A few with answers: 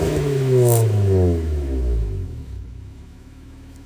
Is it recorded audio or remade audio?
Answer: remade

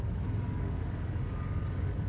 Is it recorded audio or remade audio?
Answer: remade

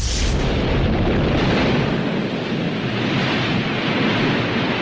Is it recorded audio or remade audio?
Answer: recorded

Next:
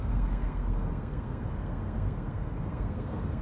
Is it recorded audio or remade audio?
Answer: remade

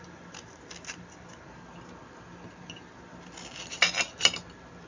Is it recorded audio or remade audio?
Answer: recorded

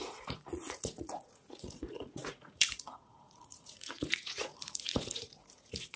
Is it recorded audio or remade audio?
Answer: remade